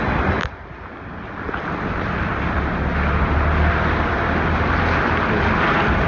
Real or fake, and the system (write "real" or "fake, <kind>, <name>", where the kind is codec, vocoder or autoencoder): real